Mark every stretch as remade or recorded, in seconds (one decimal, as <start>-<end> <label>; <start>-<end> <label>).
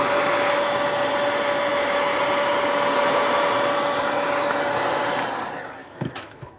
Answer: 0.0-1.7 recorded; 1.7-2.2 remade; 2.2-5.8 recorded; 5.8-6.6 remade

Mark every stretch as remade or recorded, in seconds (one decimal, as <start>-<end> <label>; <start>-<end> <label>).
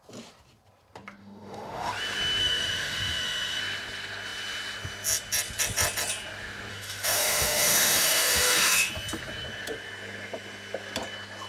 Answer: 0.0-1.2 recorded; 1.2-1.9 remade; 1.9-2.4 recorded; 2.4-3.6 remade; 3.6-6.7 recorded; 6.7-8.9 remade; 8.9-11.5 recorded